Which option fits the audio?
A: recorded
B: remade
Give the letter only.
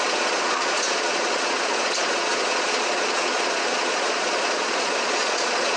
B